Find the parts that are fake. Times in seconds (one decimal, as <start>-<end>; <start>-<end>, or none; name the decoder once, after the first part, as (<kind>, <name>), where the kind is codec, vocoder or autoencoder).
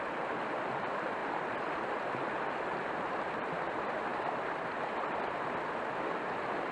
1.2-3.1 (vocoder, BigVGAN v2); 4.1-4.9